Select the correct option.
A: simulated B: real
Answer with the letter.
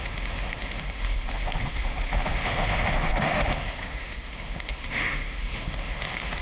A